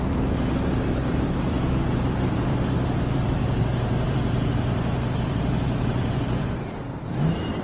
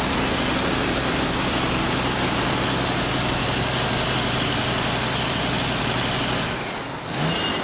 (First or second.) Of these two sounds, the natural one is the second